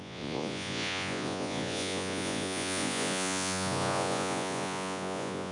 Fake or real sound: fake